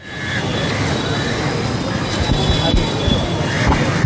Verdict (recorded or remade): recorded